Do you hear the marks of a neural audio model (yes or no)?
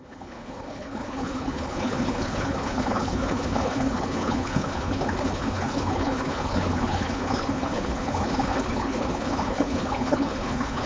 yes